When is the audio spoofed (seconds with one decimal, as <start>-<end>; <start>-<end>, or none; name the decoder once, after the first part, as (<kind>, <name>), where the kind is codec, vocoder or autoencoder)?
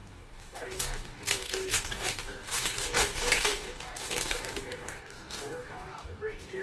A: 0.0-6.6 (codec, DAC)